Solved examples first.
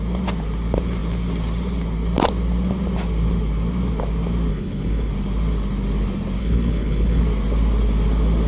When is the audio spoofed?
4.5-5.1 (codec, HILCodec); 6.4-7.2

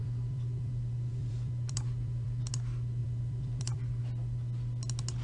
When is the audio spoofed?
0.0-0.7 (vocoder, BigVGAN v2); 1.2-2.5; 3.0-4.0

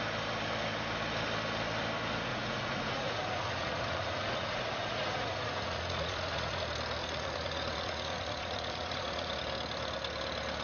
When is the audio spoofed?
2.3-6.6 (vocoder, Vocos); 7.0-9.3

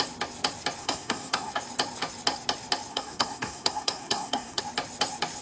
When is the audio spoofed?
0.8-1.5 (codec, SNAC); 2.9-4.6

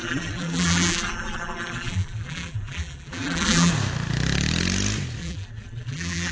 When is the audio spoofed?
0.0-3.7 (vocoder, BigVGAN v2); 5.2-6.3

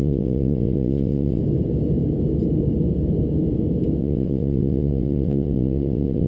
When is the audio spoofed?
0.0-1.4 (vocoder, WaveNeXt); 4.0-6.3

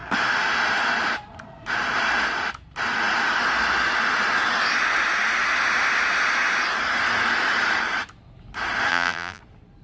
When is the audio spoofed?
8.9-9.4 (vocoder, BigVGAN v2)